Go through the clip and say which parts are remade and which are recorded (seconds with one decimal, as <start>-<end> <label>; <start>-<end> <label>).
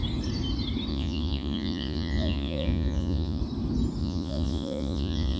0.0-0.9 recorded; 0.9-3.4 remade; 3.4-4.0 recorded; 4.0-5.4 remade